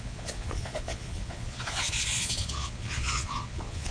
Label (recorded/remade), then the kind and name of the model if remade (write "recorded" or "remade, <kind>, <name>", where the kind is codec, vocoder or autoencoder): remade, vocoder, Vocos